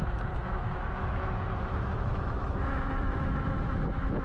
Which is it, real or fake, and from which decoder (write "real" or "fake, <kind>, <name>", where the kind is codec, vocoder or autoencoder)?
fake, autoencoder, DAC-VAE